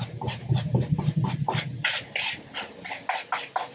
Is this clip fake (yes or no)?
no